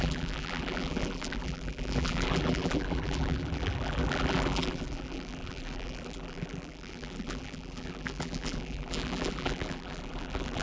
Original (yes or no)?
no